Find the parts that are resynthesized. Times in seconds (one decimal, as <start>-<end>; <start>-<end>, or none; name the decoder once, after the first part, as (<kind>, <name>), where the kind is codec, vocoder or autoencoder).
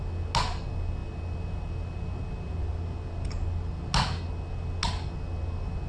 none